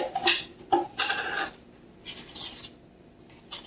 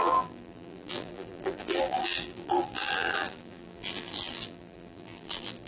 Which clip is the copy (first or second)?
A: second